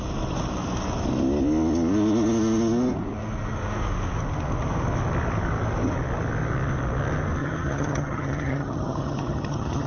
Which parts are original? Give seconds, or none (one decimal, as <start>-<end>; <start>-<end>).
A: 0.0-7.4

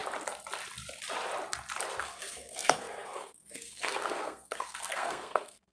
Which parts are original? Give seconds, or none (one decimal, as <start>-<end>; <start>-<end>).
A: 0.0-2.0

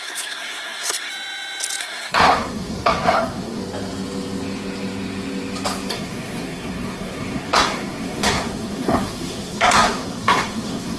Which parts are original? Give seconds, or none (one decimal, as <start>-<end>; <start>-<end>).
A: 1.1-1.8; 3.6-5.9

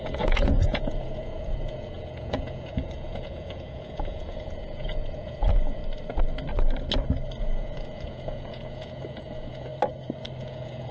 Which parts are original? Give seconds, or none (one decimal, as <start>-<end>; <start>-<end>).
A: 5.8-7.4; 9.7-10.4

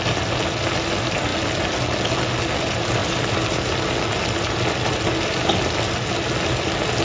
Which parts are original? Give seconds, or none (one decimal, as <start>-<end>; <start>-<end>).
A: 0.0-7.0